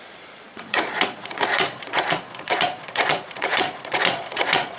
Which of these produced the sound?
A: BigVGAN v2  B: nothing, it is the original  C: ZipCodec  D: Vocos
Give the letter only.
D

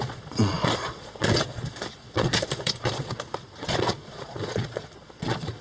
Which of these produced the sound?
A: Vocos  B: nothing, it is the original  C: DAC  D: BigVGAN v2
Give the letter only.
A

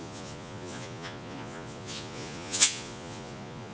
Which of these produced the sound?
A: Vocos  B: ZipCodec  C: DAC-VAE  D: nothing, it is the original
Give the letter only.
A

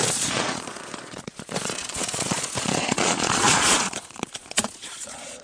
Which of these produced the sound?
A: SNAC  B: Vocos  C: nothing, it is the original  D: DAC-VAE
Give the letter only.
B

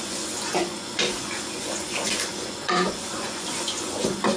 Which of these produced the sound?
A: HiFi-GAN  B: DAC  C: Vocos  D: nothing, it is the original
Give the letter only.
C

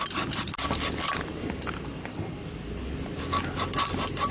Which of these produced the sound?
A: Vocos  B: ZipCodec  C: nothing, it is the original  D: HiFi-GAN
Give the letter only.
C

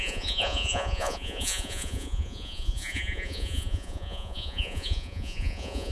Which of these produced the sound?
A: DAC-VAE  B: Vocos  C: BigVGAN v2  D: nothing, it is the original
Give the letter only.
B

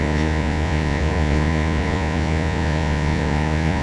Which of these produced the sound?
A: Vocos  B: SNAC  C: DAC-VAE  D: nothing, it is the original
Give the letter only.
A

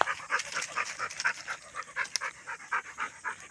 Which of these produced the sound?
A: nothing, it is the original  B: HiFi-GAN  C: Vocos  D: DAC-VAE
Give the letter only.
A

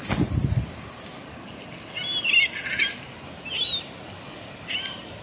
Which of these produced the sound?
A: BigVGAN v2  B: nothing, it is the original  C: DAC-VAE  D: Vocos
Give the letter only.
B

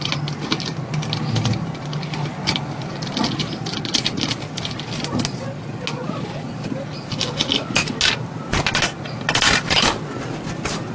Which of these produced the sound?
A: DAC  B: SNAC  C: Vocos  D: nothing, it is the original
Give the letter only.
D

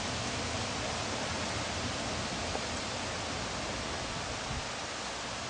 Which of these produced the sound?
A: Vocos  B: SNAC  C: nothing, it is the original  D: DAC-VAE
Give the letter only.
C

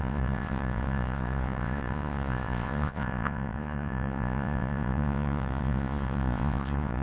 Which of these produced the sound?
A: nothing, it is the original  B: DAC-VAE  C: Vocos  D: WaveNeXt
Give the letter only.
C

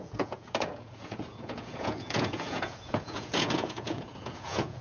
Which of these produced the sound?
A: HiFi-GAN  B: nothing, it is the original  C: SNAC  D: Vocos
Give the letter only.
D